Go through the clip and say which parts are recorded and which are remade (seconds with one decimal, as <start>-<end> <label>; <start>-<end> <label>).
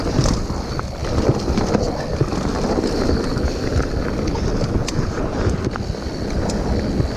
0.0-7.2 recorded